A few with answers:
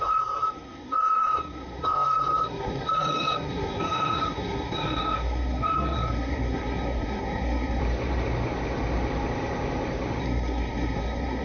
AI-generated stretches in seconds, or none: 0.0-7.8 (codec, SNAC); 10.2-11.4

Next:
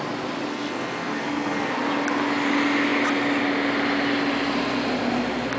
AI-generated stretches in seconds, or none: 0.5-1.7 (codec, SNAC)

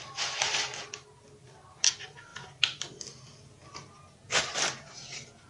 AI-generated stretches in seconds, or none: none

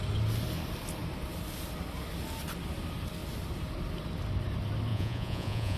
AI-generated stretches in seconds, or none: 4.9-5.8 (vocoder, Vocos)

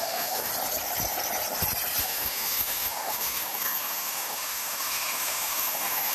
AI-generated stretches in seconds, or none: 0.0-0.5 (autoencoder, DAC-VAE); 2.0-6.1

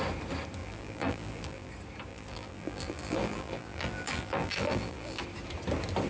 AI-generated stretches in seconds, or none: 0.6-1.7 (vocoder, BigVGAN v2); 2.1-5.2

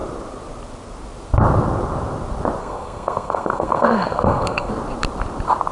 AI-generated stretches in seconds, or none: 2.6-4.7 (codec, SNAC)

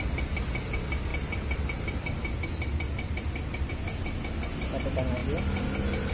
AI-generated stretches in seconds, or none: none